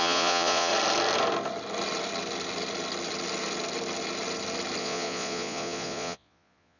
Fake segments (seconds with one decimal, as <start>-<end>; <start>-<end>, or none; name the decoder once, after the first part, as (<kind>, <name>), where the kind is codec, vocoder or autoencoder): 0.0-0.7 (vocoder, Vocos); 4.8-6.8